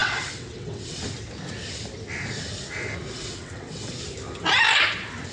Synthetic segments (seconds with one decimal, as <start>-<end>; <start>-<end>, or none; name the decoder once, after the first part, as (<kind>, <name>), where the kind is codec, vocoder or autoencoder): 0.0-1.0 (vocoder, WaveNeXt); 3.1-3.9